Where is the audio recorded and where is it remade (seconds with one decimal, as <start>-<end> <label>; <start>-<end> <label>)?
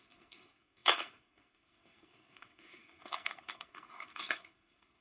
0.0-5.0 remade